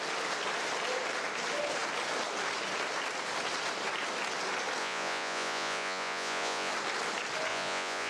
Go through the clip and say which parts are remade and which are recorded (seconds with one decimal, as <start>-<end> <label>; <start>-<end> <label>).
0.0-4.8 recorded; 4.8-6.7 remade; 6.7-7.5 recorded; 7.5-8.1 remade